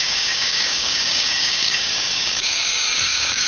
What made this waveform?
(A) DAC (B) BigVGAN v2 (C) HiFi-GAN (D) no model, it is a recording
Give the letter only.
A